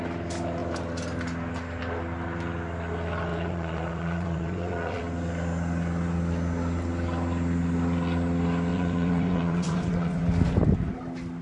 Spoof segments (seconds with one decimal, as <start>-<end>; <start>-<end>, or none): 3.3-5.0; 8.7-10.2